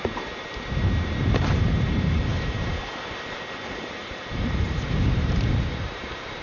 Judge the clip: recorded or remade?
remade